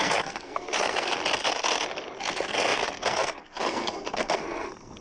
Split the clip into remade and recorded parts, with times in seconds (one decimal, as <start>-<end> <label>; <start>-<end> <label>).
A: 0.0-1.2 remade; 1.2-2.2 recorded; 2.2-5.0 remade